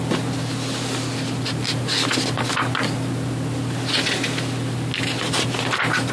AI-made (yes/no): no